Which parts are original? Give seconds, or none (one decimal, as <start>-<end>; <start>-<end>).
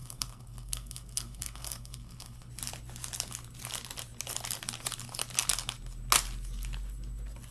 2.5-7.5